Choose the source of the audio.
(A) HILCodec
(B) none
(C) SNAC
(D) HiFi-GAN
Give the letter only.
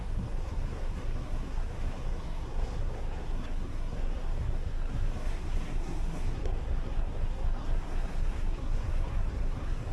C